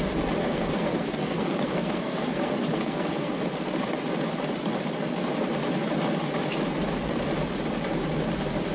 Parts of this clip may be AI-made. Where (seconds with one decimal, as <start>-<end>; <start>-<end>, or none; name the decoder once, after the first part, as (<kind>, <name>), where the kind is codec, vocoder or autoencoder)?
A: 0.4-3.3 (codec, SNAC)